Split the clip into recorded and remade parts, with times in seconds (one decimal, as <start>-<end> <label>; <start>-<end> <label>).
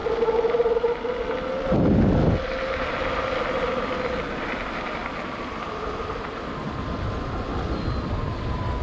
0.0-8.8 recorded